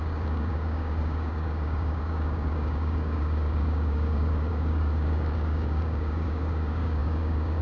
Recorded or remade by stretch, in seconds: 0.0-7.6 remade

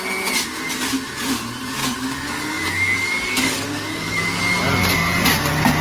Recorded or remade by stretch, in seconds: 0.0-1.8 recorded; 1.8-4.4 remade; 4.4-5.8 recorded

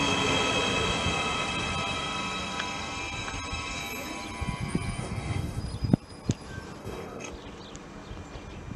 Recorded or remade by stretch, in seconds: 0.0-5.0 recorded; 5.0-5.6 remade; 5.6-6.8 recorded; 6.8-7.3 remade; 7.3-8.8 recorded

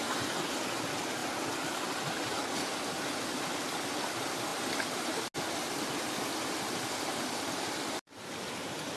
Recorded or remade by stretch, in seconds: 0.0-9.0 recorded